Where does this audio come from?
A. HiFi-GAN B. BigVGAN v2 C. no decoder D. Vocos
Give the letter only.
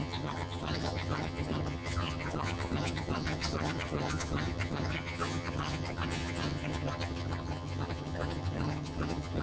A